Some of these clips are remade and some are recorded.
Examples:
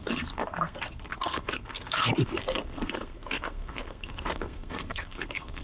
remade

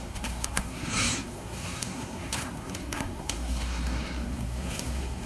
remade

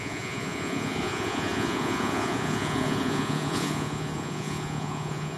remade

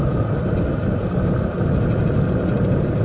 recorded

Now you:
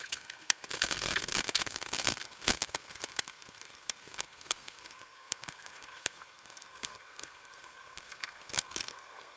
remade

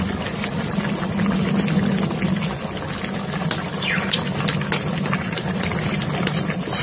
recorded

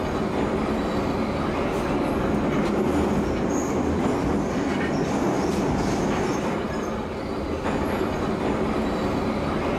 recorded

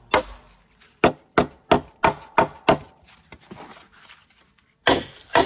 recorded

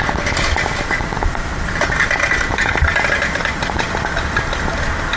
recorded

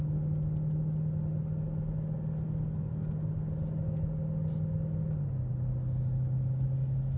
recorded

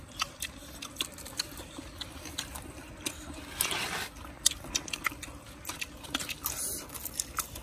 recorded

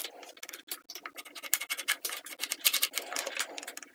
recorded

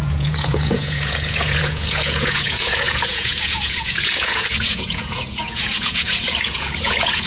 remade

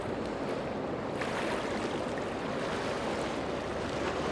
recorded